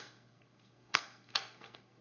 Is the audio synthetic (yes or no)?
yes